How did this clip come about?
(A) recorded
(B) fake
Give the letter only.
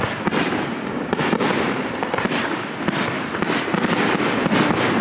B